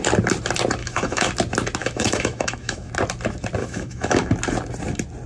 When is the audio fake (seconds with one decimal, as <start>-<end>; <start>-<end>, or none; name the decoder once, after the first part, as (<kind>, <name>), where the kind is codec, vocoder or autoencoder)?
0.8-1.3 (autoencoder, DAC-VAE); 1.8-2.9; 3.6-4.3

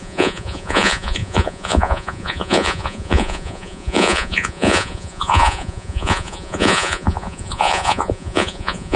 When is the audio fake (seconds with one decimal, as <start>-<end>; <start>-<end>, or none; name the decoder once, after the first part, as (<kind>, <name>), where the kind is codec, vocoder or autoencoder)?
0.0-9.0 (vocoder, Vocos)

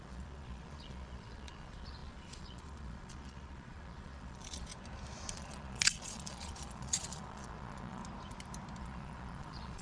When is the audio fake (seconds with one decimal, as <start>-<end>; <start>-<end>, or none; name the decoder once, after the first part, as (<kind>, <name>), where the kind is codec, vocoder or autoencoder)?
0.0-4.7 (vocoder, Vocos); 5.3-8.0; 8.8-9.8

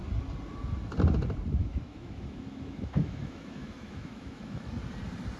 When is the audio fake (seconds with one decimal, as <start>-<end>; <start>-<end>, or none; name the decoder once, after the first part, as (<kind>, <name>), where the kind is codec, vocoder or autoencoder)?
1.6-4.7 (autoencoder, DAC-VAE)

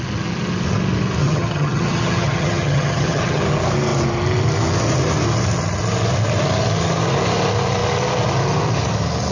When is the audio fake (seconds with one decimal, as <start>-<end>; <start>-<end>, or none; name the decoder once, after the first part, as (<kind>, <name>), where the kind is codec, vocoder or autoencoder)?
1.2-3.4 (vocoder, HiFi-GAN)

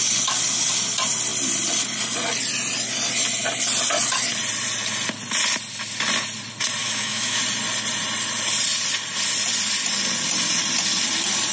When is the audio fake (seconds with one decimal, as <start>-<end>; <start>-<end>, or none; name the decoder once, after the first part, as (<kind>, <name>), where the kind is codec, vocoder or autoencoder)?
6.8-7.4 (autoencoder, DAC-VAE)